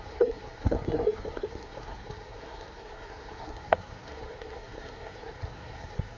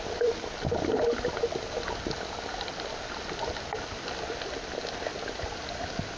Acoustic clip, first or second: second